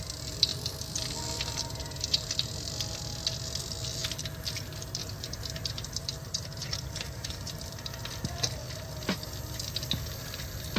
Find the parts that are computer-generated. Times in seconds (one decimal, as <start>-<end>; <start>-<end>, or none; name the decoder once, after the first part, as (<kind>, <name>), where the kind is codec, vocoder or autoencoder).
0.5-3.0 (vocoder, BigVGAN v2); 5.0-7.8